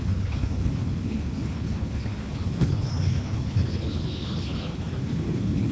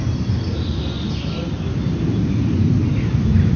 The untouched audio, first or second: second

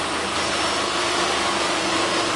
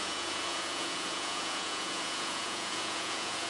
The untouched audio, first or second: first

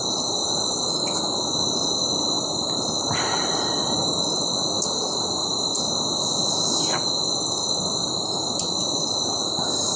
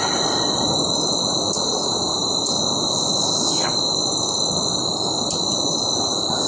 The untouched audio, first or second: first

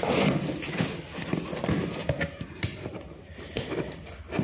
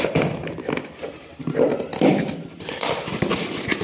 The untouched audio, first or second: first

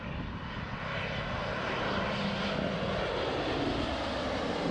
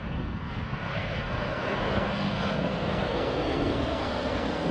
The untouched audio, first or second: first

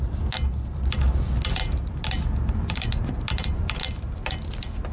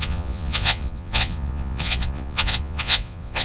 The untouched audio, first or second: first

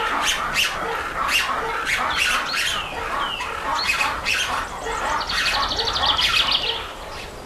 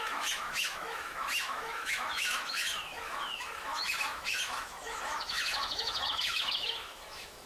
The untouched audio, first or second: first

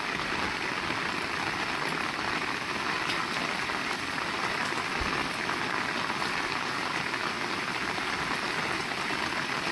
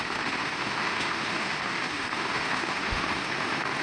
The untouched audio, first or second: first